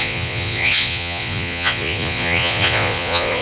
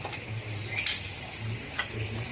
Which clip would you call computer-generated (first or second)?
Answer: first